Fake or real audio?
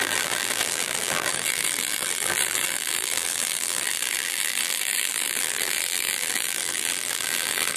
fake